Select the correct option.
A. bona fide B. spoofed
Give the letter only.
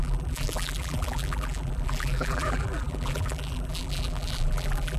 B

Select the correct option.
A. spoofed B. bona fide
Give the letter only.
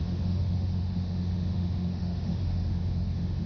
A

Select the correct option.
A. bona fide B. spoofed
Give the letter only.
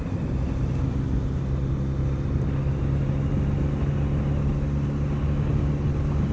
A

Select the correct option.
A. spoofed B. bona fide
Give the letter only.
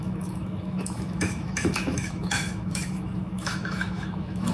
A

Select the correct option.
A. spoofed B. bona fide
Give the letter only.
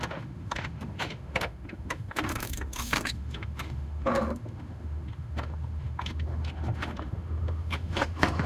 A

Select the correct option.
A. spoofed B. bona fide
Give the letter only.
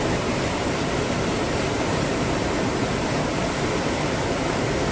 A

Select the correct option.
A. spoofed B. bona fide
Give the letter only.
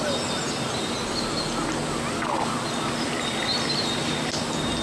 B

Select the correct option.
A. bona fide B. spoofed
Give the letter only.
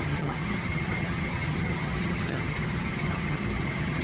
B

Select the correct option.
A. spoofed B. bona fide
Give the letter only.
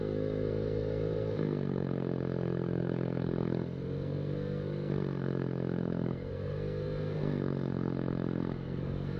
A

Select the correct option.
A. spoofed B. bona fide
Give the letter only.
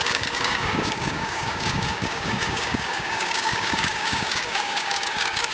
A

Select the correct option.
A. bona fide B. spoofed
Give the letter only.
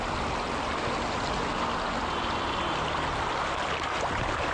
A